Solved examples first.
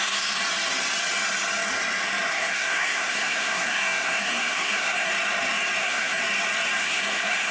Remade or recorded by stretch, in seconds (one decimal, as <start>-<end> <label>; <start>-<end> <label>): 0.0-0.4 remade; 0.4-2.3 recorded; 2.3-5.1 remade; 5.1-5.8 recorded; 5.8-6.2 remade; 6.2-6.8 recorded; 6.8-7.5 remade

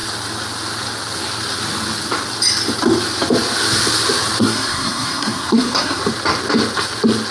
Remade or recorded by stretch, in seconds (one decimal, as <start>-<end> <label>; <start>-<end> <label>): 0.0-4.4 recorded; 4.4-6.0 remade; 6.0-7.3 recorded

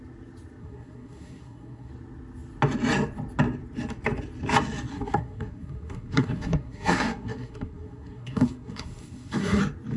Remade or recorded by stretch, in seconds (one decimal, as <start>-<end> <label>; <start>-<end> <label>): 0.0-0.6 recorded; 0.6-1.9 remade; 1.9-4.9 recorded; 4.9-9.6 remade; 9.6-10.0 recorded

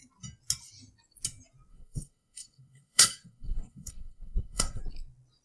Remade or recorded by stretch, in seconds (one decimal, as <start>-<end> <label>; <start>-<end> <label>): 0.0-1.7 recorded; 1.7-4.8 remade; 4.8-5.4 recorded